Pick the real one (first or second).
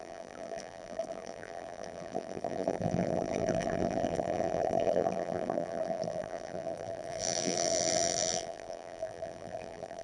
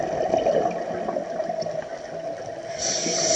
second